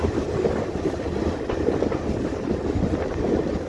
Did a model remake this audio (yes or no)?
no